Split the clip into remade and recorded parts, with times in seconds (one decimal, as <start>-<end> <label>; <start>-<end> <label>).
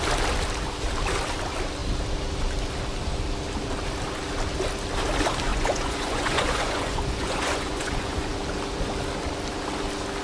0.0-5.5 recorded; 5.5-8.3 remade; 8.3-10.2 recorded